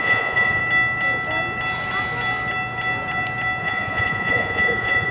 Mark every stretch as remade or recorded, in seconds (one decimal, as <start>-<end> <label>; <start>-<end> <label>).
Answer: 0.0-0.6 remade; 0.6-3.6 recorded; 3.6-5.1 remade